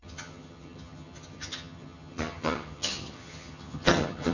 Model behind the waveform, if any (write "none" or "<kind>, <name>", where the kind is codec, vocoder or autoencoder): vocoder, HiFi-GAN